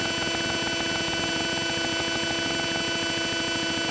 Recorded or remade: recorded